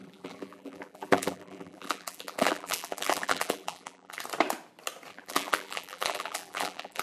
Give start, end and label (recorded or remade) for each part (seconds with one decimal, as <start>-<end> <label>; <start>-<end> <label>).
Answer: 0.0-4.2 remade; 4.2-5.1 recorded; 5.1-7.0 remade